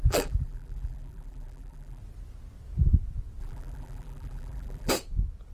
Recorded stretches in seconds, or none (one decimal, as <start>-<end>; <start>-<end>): 2.0-3.4; 4.9-5.5